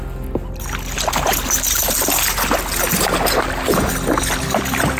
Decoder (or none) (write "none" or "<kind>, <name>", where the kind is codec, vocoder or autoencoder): none